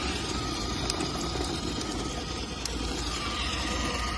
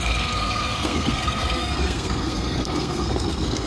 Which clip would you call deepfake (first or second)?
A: second